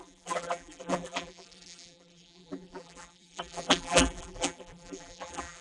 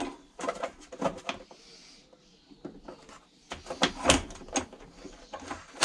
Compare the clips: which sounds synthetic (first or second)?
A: first